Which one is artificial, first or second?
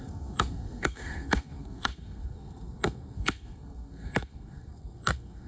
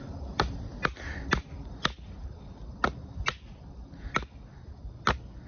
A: first